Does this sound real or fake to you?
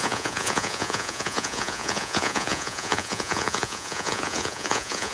fake